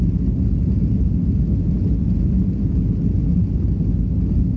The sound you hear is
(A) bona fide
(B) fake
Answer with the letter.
A